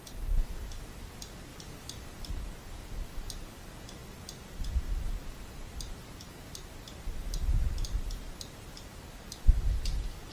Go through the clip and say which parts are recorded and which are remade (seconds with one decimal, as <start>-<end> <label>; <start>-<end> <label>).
0.0-1.5 recorded; 1.5-2.3 remade; 2.3-10.3 recorded